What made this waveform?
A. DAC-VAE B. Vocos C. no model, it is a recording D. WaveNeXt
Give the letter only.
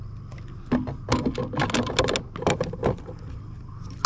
C